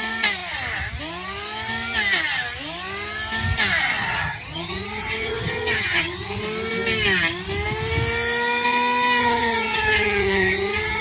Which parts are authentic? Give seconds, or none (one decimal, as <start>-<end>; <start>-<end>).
0.0-4.0; 6.4-9.2